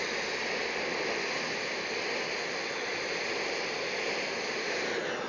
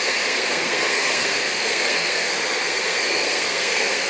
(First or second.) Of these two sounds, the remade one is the second